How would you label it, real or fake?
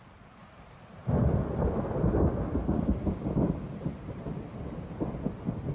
real